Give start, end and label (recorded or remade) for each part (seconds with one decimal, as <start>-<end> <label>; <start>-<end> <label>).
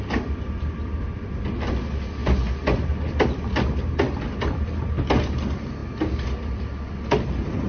0.0-2.2 remade; 2.2-4.0 recorded; 4.0-7.7 remade